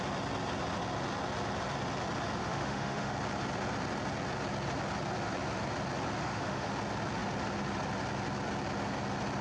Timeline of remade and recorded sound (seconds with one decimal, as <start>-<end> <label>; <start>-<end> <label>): 0.0-2.4 recorded; 2.4-3.1 remade; 3.1-6.2 recorded; 6.2-6.7 remade; 6.7-9.4 recorded